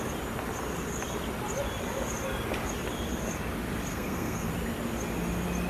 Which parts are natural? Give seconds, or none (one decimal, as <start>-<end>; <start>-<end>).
0.0-3.9; 4.5-5.7